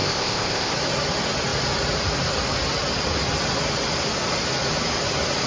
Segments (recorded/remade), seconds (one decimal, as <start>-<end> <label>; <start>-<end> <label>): 0.0-0.7 remade; 0.7-5.5 recorded